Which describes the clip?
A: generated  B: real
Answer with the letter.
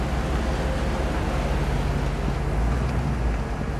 B